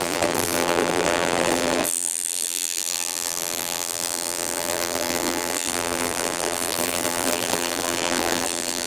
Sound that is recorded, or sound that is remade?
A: remade